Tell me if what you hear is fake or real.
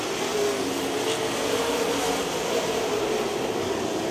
real